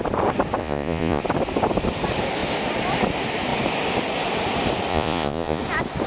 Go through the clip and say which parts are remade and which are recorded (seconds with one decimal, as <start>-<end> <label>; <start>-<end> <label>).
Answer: 0.0-0.6 recorded; 0.6-1.2 remade; 1.2-4.9 recorded; 4.9-5.6 remade; 5.6-6.1 recorded